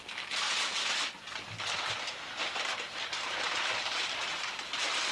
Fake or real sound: fake